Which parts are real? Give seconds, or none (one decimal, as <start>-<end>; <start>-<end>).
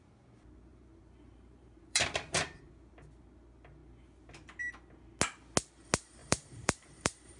0.0-0.7; 2.7-6.2